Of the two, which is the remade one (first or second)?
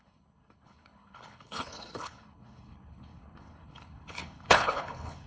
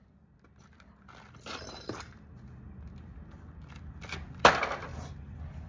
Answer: first